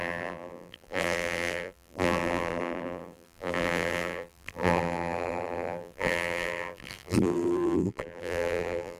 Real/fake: fake